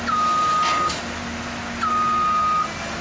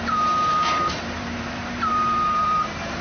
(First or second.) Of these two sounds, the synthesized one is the second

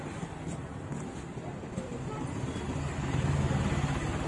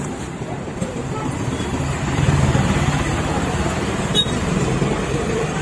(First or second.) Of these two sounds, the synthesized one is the second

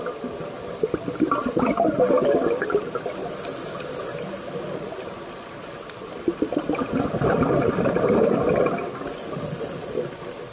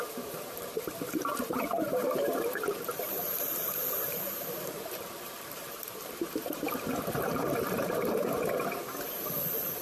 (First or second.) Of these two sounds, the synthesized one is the second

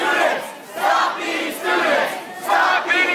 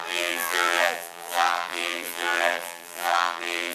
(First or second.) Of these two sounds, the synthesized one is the second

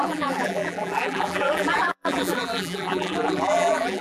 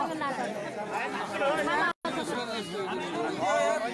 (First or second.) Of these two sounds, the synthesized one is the first